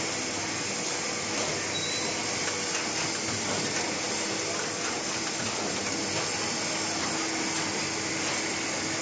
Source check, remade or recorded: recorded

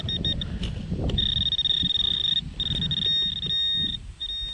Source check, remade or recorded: recorded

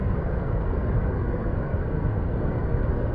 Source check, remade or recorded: remade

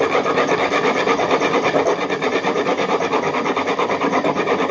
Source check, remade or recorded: recorded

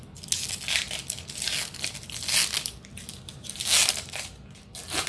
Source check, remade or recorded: recorded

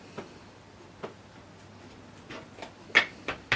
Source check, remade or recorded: recorded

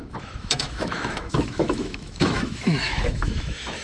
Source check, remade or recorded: remade